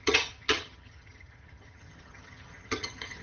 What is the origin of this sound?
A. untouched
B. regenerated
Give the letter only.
B